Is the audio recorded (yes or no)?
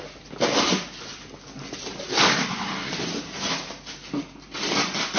yes